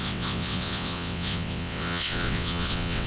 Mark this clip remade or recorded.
remade